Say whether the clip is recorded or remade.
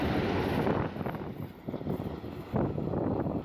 recorded